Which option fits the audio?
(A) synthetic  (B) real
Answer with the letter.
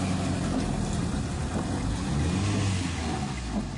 B